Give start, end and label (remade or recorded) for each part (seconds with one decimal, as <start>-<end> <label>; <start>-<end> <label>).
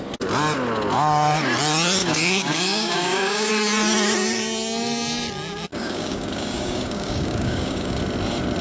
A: 0.0-2.0 recorded; 2.0-3.5 remade; 3.5-5.7 recorded; 5.7-8.0 remade; 8.0-8.6 recorded